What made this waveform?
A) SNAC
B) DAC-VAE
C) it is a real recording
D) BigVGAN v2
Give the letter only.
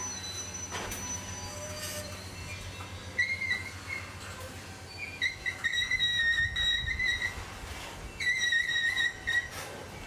C